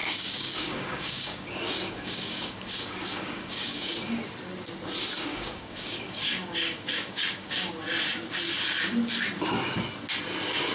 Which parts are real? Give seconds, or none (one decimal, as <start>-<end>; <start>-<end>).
3.9-5.3; 7.8-10.7